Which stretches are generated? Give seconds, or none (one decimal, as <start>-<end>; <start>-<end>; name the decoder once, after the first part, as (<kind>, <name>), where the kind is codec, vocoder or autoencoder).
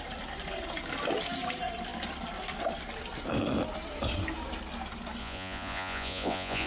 5.2-6.7 (vocoder, Vocos)